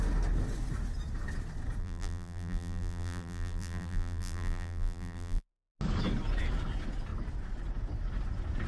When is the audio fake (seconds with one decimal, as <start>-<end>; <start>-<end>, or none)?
1.8-5.7